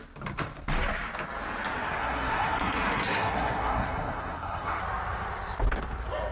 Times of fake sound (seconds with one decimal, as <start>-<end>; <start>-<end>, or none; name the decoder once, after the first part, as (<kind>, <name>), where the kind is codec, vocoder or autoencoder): 2.0-4.8 (codec, SNAC)